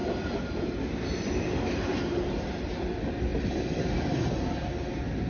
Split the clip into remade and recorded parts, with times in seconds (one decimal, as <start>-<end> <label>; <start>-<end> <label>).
0.0-0.9 remade; 0.9-1.9 recorded; 1.9-2.8 remade; 2.8-3.3 recorded; 3.3-3.8 remade; 3.8-5.3 recorded